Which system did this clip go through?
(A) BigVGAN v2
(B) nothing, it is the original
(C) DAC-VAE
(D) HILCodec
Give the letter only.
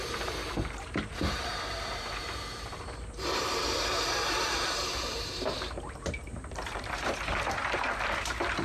A